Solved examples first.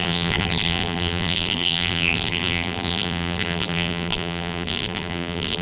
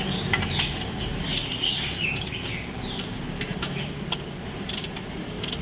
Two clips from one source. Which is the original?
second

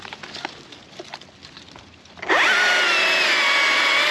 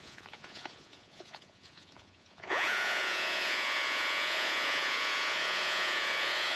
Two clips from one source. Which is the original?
first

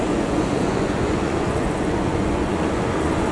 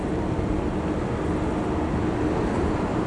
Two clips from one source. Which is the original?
second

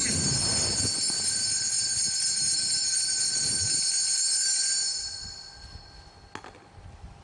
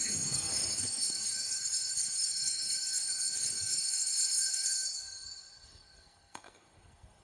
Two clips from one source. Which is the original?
first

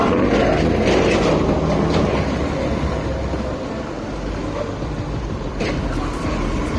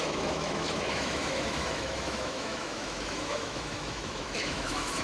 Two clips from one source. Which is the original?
first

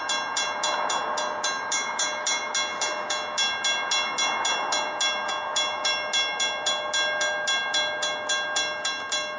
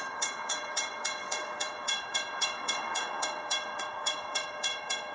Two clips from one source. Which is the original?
first